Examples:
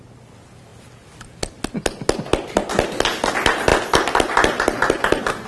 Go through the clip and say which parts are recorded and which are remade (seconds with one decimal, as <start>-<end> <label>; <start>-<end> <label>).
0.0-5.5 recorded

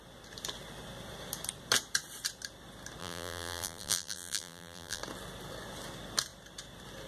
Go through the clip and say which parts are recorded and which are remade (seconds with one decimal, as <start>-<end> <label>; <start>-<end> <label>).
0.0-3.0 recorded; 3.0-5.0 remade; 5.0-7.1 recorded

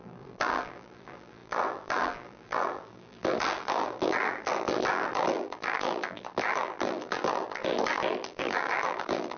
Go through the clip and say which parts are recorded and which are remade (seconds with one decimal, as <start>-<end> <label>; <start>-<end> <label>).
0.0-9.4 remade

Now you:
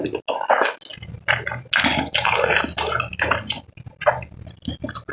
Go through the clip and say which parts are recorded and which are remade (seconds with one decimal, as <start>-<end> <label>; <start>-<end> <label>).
0.0-5.1 recorded

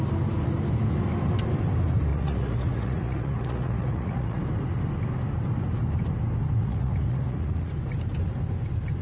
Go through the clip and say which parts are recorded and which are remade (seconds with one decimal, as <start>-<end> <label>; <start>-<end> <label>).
0.0-2.1 recorded; 2.1-4.4 remade; 4.4-6.6 recorded; 6.6-7.7 remade; 7.7-9.0 recorded

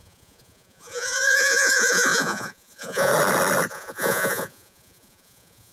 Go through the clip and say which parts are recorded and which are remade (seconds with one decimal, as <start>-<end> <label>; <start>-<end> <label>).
0.0-3.1 remade; 3.1-3.7 recorded; 3.7-5.7 remade

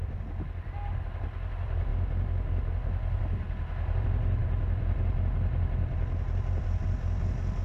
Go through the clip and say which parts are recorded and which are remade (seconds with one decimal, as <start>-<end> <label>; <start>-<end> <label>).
0.0-7.6 recorded